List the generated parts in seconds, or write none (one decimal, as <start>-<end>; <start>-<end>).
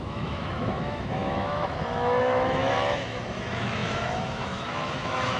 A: 0.0-5.4